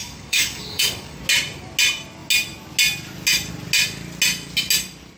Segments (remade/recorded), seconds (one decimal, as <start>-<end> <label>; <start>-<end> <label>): 0.0-1.2 remade; 1.2-5.2 recorded